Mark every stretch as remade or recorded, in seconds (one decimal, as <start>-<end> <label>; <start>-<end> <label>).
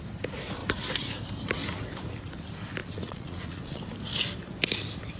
0.0-2.8 recorded; 2.8-3.8 remade; 3.8-5.2 recorded